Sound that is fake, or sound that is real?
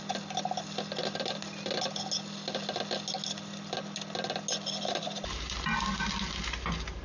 real